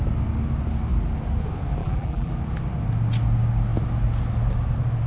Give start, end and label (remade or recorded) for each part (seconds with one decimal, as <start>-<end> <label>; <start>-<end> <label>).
0.0-1.8 recorded; 1.8-2.3 remade; 2.3-5.1 recorded